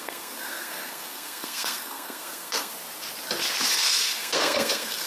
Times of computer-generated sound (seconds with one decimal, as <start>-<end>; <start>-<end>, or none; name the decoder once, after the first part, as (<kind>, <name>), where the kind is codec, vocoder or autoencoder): 0.0-2.7 (codec, SNAC); 3.7-5.1